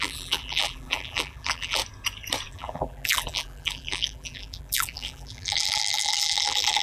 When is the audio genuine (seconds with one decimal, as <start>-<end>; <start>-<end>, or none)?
1.8-2.5

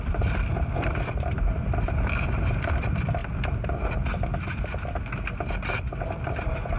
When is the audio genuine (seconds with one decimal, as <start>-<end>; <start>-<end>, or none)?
3.2-5.4